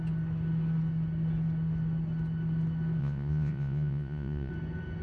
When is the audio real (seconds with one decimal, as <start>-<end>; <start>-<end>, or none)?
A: 0.0-3.0; 4.5-5.0